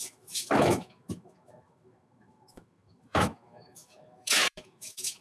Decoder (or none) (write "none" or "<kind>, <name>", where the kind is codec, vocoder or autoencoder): autoencoder, DAC-VAE